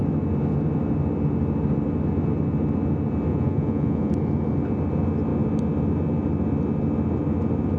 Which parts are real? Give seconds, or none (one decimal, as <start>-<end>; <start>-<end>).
0.0-3.3; 4.1-7.8